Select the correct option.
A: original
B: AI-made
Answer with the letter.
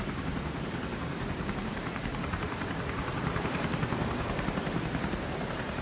B